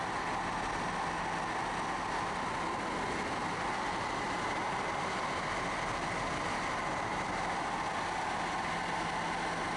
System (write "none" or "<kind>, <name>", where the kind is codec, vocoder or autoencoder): none